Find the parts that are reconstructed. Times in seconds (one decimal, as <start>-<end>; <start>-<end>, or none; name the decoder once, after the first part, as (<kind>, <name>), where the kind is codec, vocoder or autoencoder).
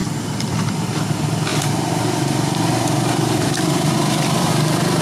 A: 0.0-0.7 (vocoder, BigVGAN v2); 1.5-4.5